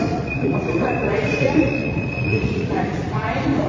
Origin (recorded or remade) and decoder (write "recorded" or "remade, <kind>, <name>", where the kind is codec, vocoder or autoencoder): remade, vocoder, Vocos